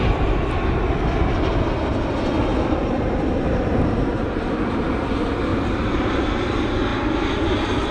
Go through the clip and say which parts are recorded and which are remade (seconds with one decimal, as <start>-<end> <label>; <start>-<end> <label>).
0.0-2.5 recorded; 2.5-4.4 remade; 4.4-5.5 recorded; 5.5-6.2 remade; 6.2-7.9 recorded